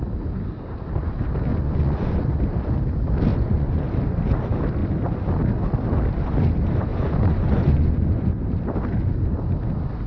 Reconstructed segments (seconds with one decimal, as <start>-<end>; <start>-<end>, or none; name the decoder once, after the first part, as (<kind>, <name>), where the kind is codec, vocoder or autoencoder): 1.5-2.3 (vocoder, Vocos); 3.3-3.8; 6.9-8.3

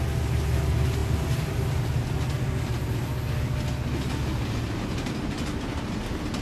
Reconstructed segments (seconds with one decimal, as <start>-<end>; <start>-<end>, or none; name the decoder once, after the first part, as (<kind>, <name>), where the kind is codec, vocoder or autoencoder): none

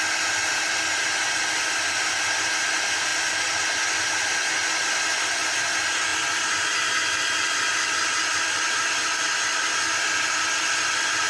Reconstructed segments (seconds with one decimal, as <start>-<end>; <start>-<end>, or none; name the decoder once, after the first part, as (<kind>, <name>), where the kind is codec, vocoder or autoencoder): none